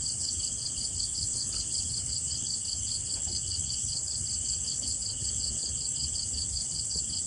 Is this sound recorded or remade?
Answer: remade